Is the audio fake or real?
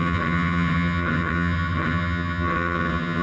fake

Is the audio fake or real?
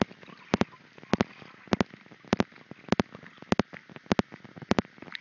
real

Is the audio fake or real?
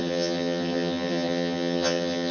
fake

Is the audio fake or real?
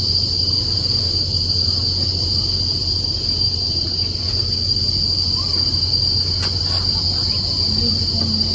real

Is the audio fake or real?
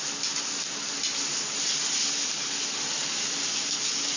real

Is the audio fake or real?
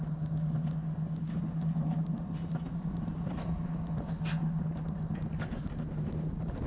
real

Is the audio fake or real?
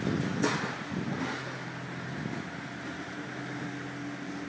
real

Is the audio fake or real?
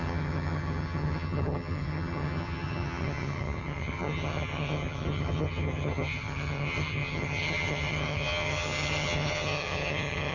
fake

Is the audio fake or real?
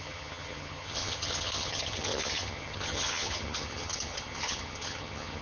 fake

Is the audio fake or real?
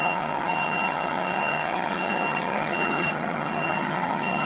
fake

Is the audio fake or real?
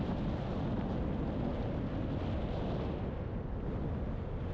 real